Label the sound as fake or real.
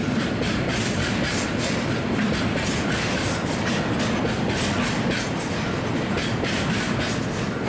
real